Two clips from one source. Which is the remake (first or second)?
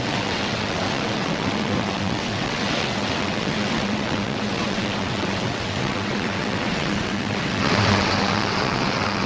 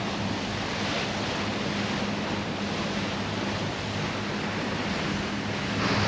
first